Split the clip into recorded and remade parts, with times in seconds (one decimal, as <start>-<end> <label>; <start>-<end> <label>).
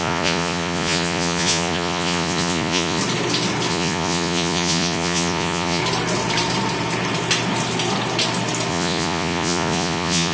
0.0-3.0 remade; 3.0-3.7 recorded; 3.7-5.8 remade; 5.8-8.7 recorded; 8.7-10.3 remade